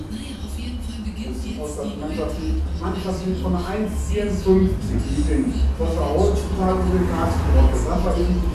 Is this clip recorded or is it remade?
recorded